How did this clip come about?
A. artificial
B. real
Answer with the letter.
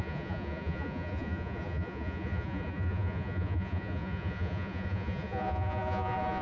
A